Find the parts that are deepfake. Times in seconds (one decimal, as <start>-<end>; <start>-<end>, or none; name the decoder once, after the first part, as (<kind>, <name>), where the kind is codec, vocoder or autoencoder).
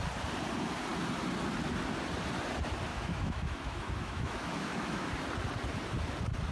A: 2.9-5.1 (autoencoder, DAC-VAE)